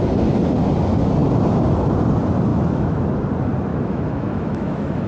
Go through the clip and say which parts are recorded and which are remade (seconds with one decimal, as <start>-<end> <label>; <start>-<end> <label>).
0.0-2.5 recorded; 2.5-3.0 remade; 3.0-3.7 recorded; 3.7-5.1 remade